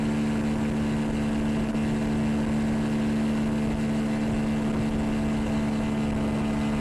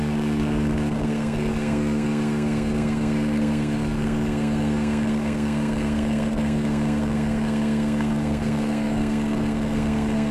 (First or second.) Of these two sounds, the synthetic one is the second